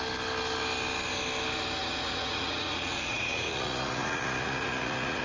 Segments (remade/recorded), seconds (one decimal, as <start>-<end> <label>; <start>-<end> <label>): 0.0-1.8 recorded; 1.8-5.2 remade